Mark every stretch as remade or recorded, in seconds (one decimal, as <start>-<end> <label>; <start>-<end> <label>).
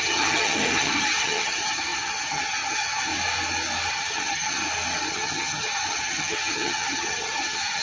0.0-3.1 remade; 3.1-3.9 recorded; 3.9-4.6 remade; 4.6-5.1 recorded; 5.1-7.8 remade